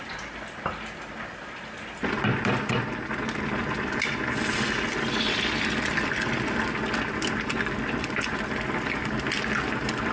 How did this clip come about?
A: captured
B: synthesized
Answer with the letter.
A